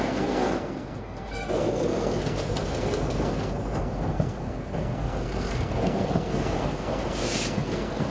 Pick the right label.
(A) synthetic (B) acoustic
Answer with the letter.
A